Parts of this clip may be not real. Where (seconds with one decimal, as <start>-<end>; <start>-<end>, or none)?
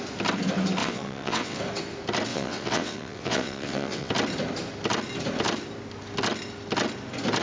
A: 0.8-1.6; 2.3-4.1